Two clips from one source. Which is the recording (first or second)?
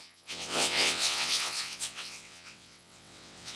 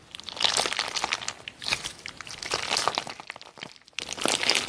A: second